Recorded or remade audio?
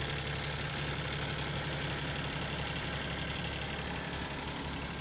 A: recorded